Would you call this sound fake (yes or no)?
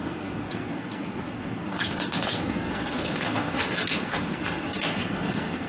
yes